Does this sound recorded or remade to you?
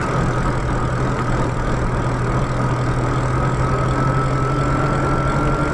recorded